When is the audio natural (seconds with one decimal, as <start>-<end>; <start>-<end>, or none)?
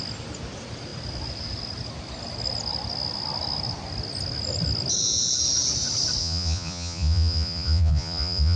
0.0-6.2